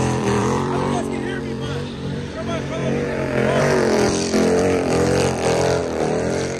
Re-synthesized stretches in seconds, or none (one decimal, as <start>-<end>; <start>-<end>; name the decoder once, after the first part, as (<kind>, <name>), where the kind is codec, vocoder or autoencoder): 0.0-2.8 (vocoder, BigVGAN v2); 3.6-6.6

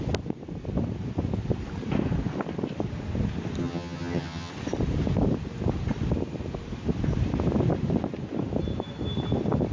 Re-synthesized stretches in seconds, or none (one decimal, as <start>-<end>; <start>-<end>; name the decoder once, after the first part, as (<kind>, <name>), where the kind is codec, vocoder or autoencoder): 3.6-4.5 (vocoder, HiFi-GAN)

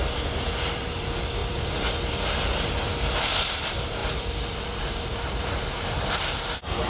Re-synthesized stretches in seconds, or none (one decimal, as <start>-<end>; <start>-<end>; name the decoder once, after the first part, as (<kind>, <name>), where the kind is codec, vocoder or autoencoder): 0.0-6.9 (vocoder, BigVGAN v2)

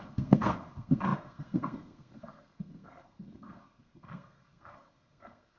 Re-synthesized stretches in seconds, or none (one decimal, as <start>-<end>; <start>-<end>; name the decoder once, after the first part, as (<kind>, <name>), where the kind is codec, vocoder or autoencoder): 0.0-5.6 (codec, SNAC)

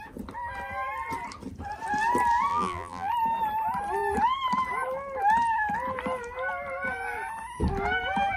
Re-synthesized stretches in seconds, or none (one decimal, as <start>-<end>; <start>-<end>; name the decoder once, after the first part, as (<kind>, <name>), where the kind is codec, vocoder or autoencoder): 2.5-3.1 (vocoder, BigVGAN v2)

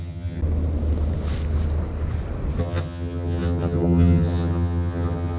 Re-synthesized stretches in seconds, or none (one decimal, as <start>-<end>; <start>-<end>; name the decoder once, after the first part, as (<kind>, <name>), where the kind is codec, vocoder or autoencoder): 0.0-0.4 (vocoder, HiFi-GAN); 2.6-5.4

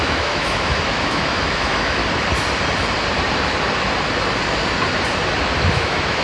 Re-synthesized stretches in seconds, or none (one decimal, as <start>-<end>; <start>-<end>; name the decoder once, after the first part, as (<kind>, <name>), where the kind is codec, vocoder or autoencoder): 0.0-2.0 (autoencoder, DAC-VAE); 5.7-6.2